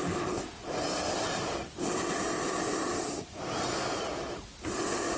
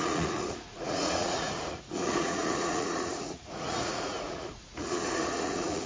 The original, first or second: first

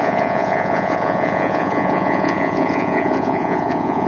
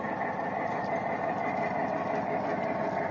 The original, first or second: second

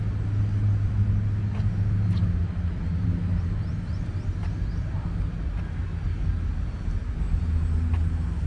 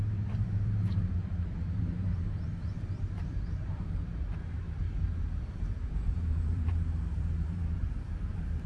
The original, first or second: first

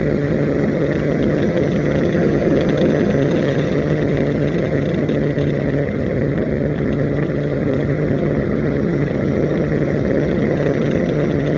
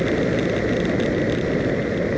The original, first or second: second